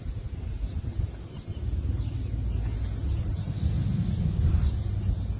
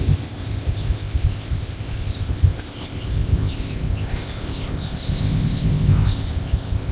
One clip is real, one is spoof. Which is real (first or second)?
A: first